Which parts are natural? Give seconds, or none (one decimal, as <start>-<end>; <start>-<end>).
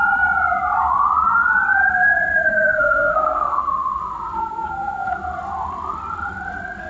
0.0-2.5; 3.7-4.4; 5.1-6.9